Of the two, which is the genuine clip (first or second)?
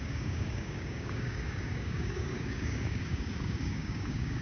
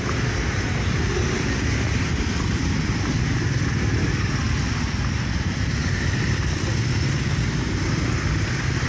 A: second